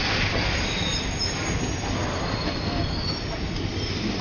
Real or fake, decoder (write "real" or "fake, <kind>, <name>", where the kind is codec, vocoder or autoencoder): real